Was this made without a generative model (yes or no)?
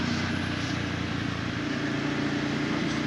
yes